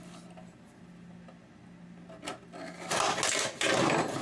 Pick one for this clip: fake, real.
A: real